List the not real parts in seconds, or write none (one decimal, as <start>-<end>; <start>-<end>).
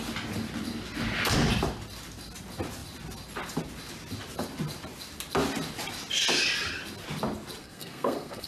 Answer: 7.6-8.5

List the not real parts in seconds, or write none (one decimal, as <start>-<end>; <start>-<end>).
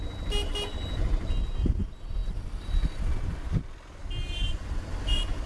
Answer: none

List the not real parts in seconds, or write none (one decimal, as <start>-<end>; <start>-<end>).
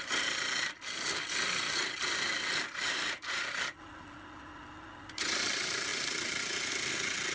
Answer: none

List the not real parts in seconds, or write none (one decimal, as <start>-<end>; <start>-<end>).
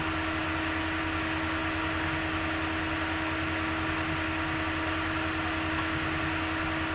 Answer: none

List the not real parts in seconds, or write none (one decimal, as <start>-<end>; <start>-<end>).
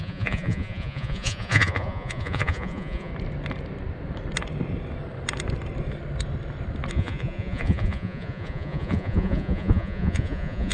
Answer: 0.0-3.1; 6.9-10.7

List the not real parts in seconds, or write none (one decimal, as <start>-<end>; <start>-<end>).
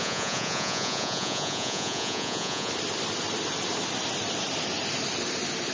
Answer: 0.0-2.7